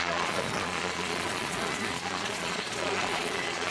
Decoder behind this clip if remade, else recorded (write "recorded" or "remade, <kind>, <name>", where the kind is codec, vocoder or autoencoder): remade, vocoder, Vocos